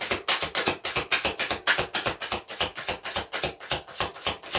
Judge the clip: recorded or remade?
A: recorded